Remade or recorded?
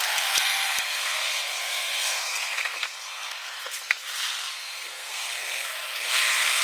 remade